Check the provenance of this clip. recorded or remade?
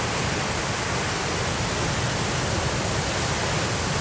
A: recorded